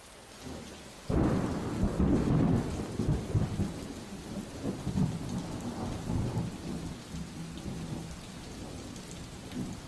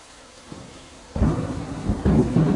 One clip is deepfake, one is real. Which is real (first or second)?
first